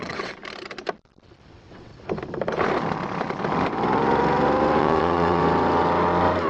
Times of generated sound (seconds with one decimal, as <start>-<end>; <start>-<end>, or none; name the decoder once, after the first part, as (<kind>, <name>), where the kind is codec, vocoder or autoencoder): 0.0-0.4 (vocoder, WaveNeXt); 1.5-1.9; 4.8-5.4